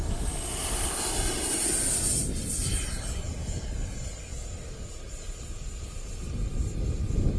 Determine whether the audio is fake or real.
real